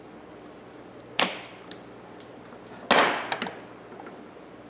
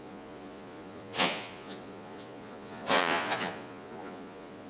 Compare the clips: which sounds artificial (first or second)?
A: second